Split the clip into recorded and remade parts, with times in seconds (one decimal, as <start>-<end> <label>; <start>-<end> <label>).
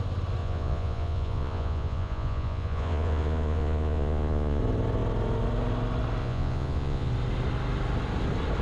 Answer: 0.0-0.4 recorded; 0.4-4.6 remade; 4.6-6.2 recorded; 6.2-7.1 remade; 7.1-8.6 recorded